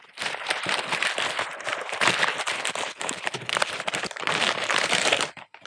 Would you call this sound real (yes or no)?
no